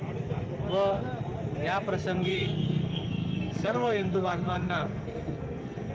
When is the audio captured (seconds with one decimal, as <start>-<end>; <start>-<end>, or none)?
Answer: 0.0-2.3